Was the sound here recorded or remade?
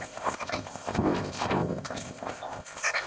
remade